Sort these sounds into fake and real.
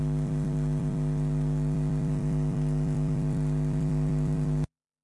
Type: fake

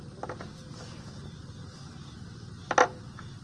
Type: real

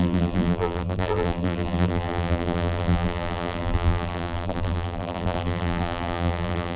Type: fake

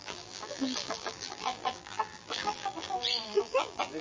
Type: fake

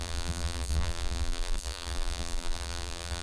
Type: fake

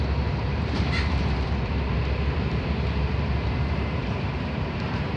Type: fake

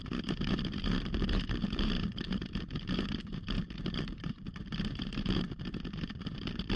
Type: fake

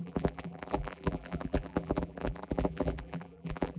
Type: fake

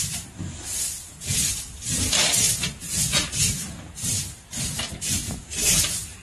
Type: fake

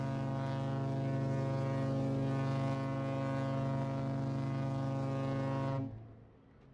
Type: real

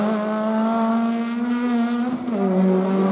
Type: real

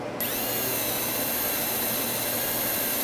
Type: real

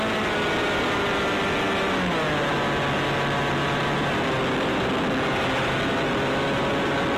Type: real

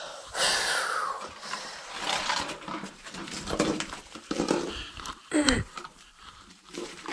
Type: fake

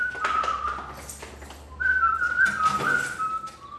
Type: real